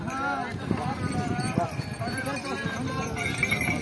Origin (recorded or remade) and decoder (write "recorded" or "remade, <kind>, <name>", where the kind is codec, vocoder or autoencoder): recorded